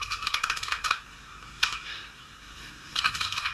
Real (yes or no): no